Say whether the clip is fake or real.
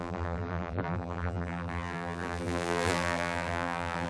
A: fake